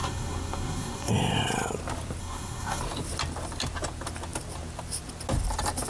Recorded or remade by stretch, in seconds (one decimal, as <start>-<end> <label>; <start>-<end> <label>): 0.0-1.1 remade; 1.1-2.2 recorded; 2.2-2.8 remade; 2.8-5.9 recorded